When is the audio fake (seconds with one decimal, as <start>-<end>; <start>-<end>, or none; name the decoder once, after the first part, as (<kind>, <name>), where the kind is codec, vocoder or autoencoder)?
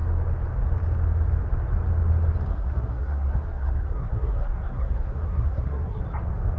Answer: 2.5-6.0 (codec, SNAC)